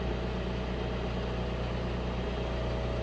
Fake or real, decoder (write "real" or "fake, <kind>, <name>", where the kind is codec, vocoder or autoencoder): real